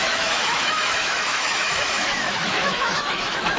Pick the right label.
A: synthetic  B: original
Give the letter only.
A